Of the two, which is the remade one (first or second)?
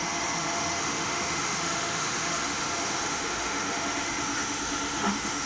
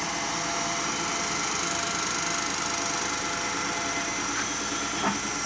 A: first